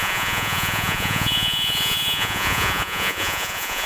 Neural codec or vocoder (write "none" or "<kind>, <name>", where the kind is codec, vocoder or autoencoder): vocoder, Vocos